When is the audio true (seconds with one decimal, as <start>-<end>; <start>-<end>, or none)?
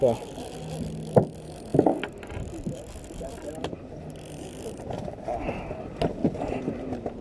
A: 0.0-6.2; 6.8-7.2